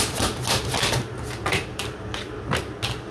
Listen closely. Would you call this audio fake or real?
real